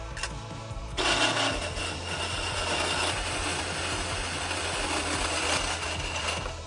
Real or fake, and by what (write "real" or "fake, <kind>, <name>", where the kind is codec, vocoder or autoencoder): real